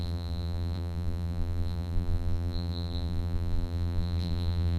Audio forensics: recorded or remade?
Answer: remade